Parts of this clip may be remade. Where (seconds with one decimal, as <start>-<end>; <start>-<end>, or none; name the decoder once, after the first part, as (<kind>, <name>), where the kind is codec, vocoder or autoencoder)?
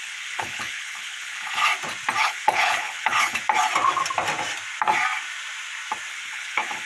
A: 0.0-1.7 (codec, HILCodec); 2.2-3.4; 6.1-6.9